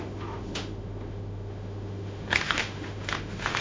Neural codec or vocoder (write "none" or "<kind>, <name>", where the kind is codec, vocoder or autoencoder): autoencoder, DAC-VAE